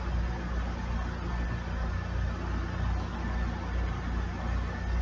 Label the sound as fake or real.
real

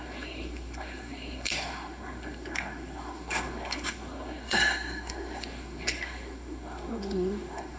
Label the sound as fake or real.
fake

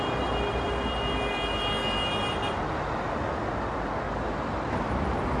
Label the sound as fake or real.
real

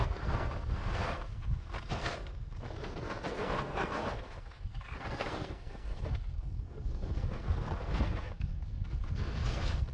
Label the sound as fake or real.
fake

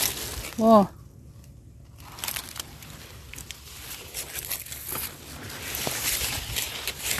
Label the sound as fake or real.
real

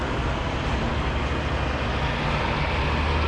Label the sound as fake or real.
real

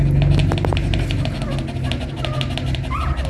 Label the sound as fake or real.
real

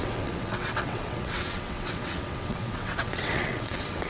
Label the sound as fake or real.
fake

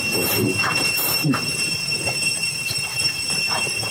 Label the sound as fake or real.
fake